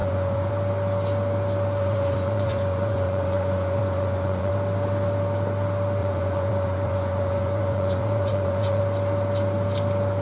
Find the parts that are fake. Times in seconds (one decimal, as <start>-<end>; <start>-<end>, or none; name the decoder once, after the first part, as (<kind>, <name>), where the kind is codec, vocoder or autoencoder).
0.0-0.5 (vocoder, Vocos); 1.8-4.5; 6.0-8.8